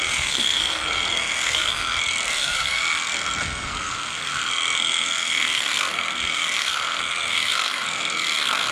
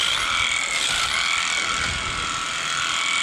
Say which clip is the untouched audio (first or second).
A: second